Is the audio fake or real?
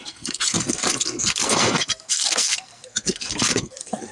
fake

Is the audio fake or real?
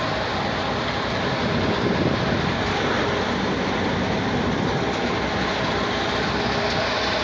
real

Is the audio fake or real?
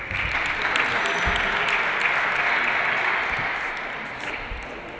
real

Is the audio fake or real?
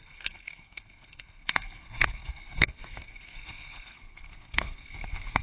fake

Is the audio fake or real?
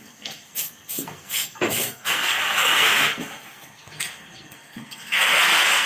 fake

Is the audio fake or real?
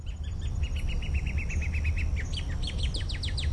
real